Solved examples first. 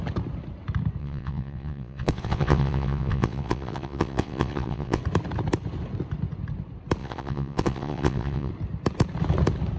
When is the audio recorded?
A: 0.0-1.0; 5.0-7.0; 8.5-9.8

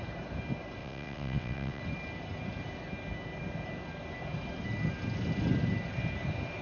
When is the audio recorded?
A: 0.0-0.8; 1.8-6.6

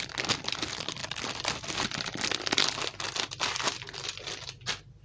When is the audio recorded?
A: 0.0-5.0

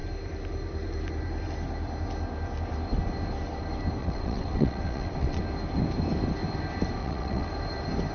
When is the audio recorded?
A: 0.0-4.0; 5.4-7.0; 7.5-8.1

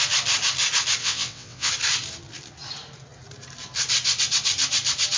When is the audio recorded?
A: 0.0-1.0; 1.7-5.2

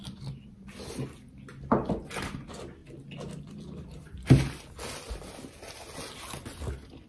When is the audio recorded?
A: 0.0-7.1

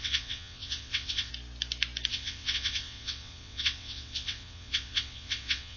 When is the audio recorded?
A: 1.3-2.1